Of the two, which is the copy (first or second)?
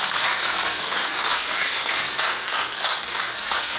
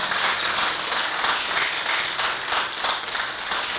first